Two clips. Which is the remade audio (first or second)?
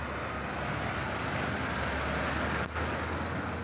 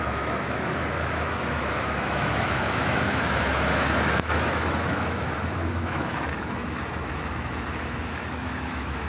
second